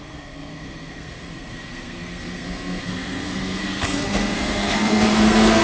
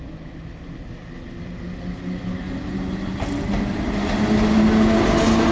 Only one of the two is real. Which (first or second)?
second